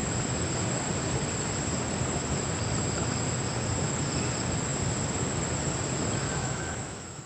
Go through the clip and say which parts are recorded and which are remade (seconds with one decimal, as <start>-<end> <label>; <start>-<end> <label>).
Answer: 0.0-6.4 recorded; 6.4-7.3 remade